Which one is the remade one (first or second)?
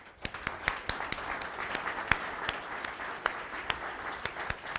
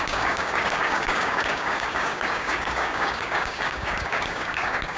second